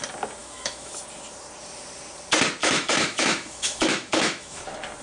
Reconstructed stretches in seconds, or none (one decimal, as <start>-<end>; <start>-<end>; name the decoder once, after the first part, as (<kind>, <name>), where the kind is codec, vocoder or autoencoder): 0.4-0.9 (autoencoder, DAC-VAE); 2.6-4.6